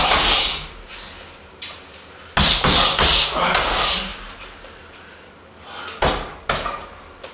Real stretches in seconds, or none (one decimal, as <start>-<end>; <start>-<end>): 0.0-7.3